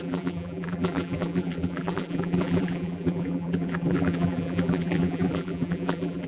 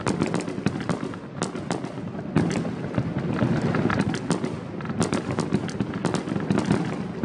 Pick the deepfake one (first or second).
first